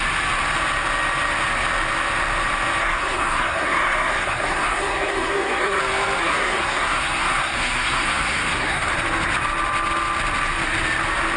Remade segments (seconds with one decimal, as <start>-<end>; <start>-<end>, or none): 2.8-5.8; 6.2-8.9